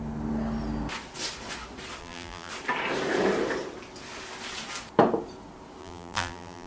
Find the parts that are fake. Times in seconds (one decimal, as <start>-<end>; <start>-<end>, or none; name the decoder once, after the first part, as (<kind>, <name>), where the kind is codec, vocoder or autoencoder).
2.0-2.5 (vocoder, BigVGAN v2); 5.8-6.7